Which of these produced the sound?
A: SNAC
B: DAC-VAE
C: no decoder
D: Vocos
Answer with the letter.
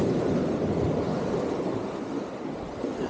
C